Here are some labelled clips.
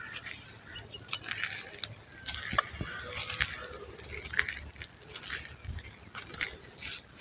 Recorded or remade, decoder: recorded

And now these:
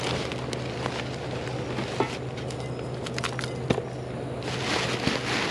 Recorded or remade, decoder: recorded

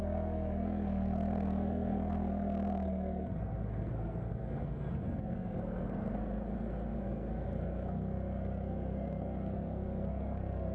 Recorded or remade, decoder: remade, codec, SNAC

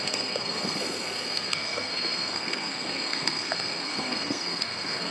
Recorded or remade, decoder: remade, codec, SNAC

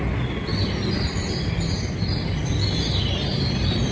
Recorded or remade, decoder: recorded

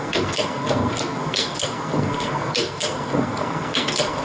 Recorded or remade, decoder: remade, codec, SNAC